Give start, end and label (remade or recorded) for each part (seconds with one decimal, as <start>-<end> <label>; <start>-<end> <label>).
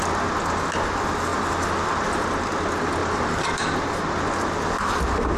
0.0-3.0 recorded; 3.0-4.0 remade; 4.0-5.4 recorded